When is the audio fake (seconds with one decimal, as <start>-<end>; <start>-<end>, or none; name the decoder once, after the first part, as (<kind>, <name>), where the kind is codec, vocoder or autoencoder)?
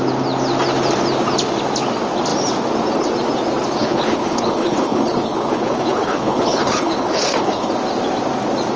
3.8-7.7 (codec, HILCodec)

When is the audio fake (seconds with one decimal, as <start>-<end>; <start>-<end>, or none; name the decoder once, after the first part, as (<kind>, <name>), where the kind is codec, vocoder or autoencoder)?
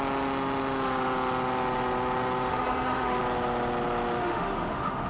2.5-3.2 (autoencoder, DAC-VAE); 4.2-5.1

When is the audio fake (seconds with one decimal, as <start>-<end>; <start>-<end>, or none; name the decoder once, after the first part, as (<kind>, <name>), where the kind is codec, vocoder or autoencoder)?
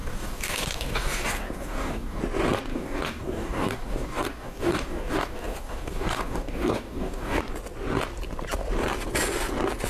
0.0-2.2 (codec, DAC); 2.7-7.4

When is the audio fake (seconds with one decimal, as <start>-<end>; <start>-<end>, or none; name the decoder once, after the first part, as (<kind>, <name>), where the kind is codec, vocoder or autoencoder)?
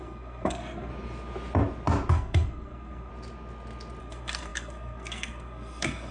0.0-0.9 (codec, SNAC); 2.1-3.1; 4.0-6.1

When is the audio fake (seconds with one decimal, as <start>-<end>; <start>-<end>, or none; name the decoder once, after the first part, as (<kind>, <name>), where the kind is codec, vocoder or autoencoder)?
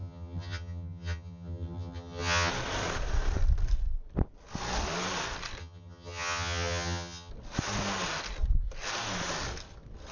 0.0-2.5 (vocoder, HiFi-GAN); 5.6-7.3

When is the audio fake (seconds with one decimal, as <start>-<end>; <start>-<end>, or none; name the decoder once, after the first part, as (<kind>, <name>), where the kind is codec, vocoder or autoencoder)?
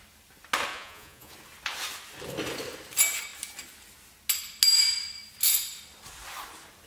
0.7-1.3 (vocoder, Vocos)